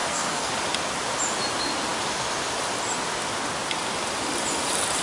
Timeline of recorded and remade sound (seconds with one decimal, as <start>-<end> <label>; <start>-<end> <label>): 0.0-0.5 remade; 0.5-5.0 recorded